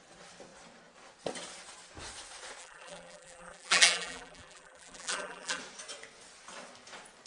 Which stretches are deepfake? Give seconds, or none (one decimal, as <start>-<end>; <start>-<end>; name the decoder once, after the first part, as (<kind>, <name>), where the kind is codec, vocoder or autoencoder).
2.6-5.6 (vocoder, BigVGAN v2)